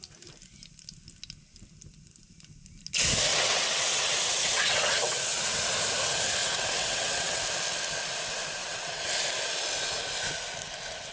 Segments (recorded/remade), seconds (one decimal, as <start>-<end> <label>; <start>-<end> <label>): 0.0-3.3 recorded; 3.3-5.4 remade; 5.4-6.4 recorded; 6.4-7.4 remade; 7.4-8.6 recorded; 8.6-9.1 remade; 9.1-11.1 recorded